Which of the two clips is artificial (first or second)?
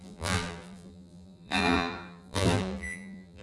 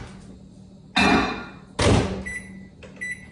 first